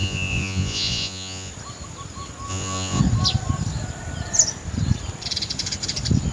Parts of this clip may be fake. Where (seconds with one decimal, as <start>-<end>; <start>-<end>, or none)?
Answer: 0.0-1.5; 2.5-3.0